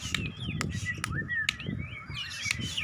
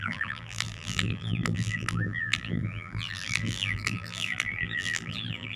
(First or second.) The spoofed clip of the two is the second